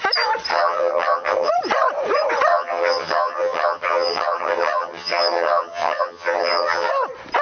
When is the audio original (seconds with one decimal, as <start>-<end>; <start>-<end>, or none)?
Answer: 0.0-0.5; 1.5-2.5; 6.9-7.4

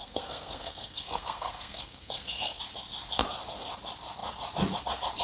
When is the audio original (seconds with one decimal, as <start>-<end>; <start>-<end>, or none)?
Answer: 2.6-5.2

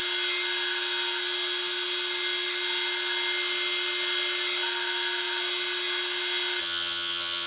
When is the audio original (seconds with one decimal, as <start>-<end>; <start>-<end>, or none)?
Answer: 0.0-6.6